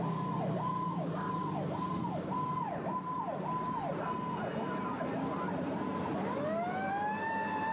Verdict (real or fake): real